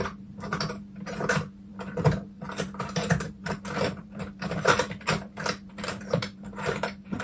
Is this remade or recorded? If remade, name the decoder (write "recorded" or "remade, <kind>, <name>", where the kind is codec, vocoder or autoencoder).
remade, vocoder, BigVGAN v2